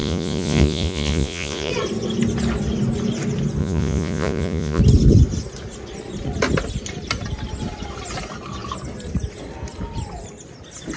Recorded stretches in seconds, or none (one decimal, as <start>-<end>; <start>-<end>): 1.7-3.6; 4.8-11.0